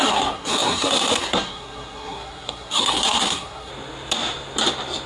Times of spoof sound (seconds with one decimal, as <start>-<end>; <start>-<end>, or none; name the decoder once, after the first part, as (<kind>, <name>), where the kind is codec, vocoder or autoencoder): 0.0-3.7 (codec, SNAC)